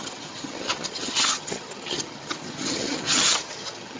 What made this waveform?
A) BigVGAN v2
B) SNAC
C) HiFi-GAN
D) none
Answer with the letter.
C